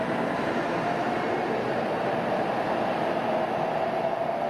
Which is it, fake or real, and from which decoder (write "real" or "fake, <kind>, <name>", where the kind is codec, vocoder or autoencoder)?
real